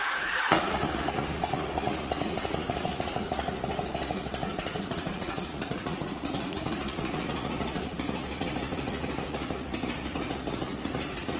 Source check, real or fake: fake